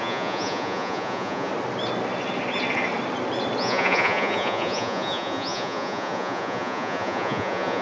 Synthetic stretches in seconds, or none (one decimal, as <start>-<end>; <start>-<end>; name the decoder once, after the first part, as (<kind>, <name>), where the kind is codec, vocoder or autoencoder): 0.0-1.5 (vocoder, Vocos); 3.6-7.8